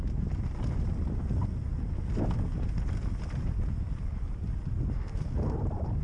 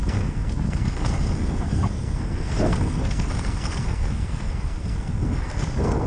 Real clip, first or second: first